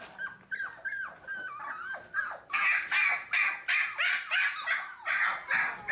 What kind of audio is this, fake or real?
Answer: real